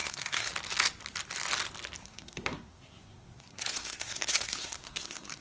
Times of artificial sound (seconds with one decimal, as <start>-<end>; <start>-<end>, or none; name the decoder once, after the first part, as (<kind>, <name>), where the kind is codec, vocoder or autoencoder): 0.0-0.5 (codec, SNAC); 2.0-5.4